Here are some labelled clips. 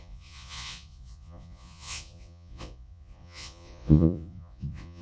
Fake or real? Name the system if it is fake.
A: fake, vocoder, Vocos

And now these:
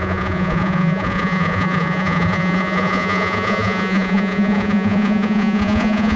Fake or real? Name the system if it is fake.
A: fake, vocoder, Vocos